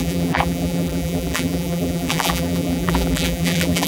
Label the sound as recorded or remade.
remade